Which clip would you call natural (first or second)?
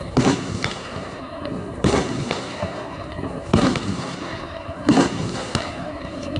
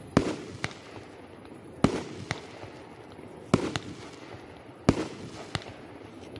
second